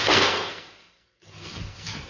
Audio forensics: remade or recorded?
remade